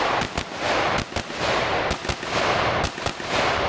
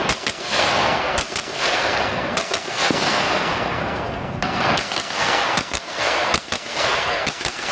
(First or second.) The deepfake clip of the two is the second